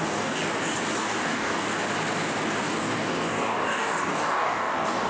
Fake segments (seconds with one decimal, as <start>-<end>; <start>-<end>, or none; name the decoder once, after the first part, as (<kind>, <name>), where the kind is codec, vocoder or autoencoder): 0.0-0.4 (codec, DAC); 1.0-1.7; 2.8-5.1